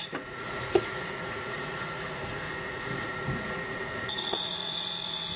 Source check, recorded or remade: remade